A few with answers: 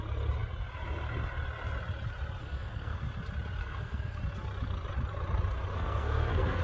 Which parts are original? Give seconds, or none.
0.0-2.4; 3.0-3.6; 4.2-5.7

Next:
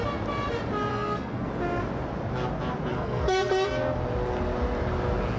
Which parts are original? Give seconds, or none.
0.0-0.9; 1.5-2.9; 3.5-5.4

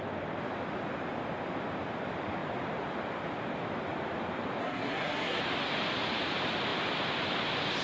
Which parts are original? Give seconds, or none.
0.0-4.6; 5.4-7.8

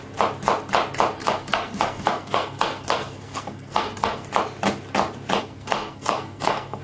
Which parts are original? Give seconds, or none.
0.0-1.2; 4.3-5.4

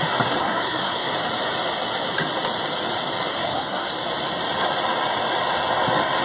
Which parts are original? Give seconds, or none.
0.0-0.4; 1.1-3.3; 3.9-6.2